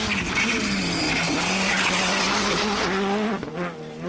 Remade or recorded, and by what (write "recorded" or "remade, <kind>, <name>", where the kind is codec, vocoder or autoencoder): recorded